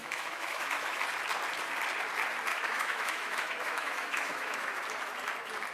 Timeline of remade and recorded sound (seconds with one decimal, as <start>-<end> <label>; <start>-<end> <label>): 0.0-1.0 remade; 1.0-2.5 recorded; 2.5-4.8 remade; 4.8-5.7 recorded